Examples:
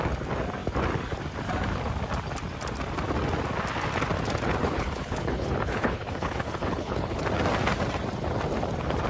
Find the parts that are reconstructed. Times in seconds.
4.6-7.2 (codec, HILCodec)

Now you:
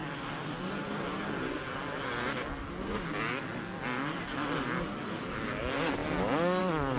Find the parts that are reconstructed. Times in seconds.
none

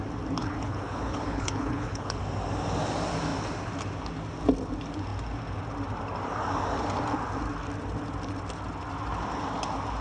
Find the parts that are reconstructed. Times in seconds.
0.4-2.2 (codec, HILCodec)

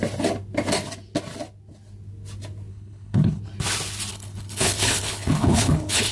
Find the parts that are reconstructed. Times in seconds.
2.7-3.4 (codec, HILCodec); 4.1-6.1